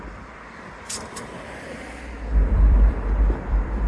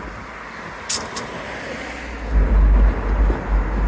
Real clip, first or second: second